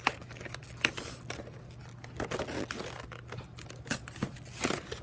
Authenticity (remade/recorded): recorded